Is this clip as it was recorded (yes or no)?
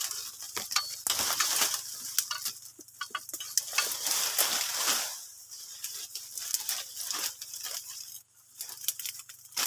yes